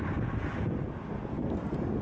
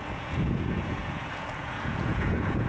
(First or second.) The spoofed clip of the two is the second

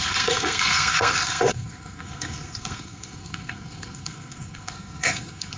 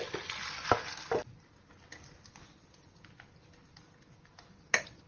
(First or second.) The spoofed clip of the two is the first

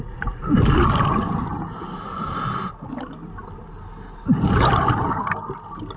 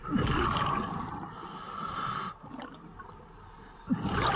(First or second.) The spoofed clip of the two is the second